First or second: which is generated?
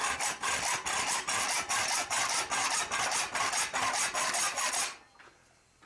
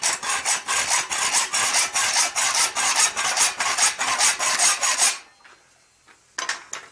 first